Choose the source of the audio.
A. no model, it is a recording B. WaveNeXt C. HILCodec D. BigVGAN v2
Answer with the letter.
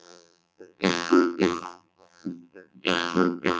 D